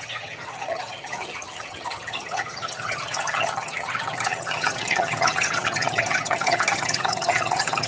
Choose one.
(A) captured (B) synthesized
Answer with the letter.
B